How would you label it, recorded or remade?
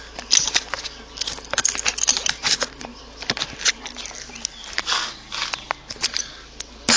recorded